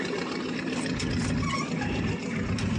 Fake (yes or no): yes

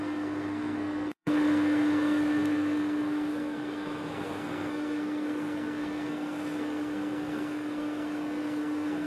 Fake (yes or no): yes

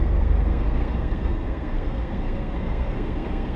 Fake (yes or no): yes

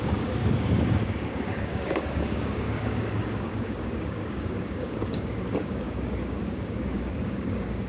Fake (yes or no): yes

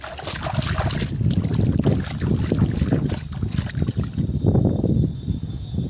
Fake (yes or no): no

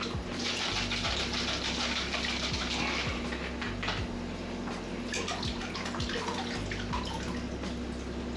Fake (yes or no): no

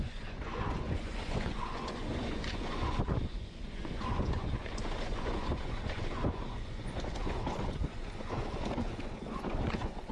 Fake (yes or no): yes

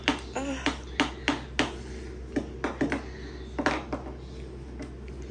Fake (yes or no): no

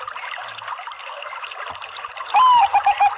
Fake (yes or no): no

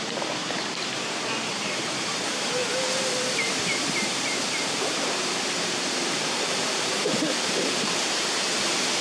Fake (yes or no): yes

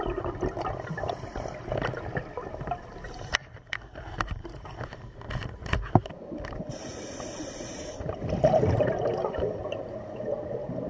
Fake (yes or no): yes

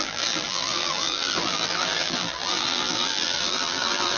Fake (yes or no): yes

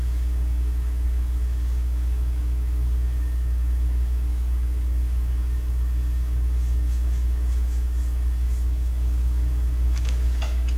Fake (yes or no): yes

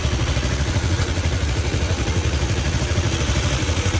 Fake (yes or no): yes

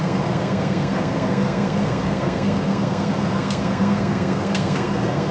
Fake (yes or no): yes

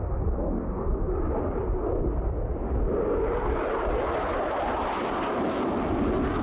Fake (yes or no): no